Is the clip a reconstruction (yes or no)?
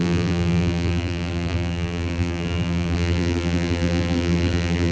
yes